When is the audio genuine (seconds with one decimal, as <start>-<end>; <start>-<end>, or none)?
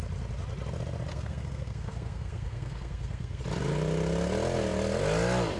0.0-1.1; 3.4-5.6